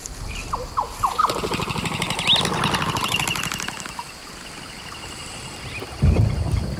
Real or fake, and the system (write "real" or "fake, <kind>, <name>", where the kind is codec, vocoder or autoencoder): real